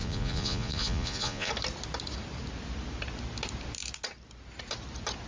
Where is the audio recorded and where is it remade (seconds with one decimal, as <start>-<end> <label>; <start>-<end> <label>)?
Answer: 0.0-1.5 remade; 1.5-5.3 recorded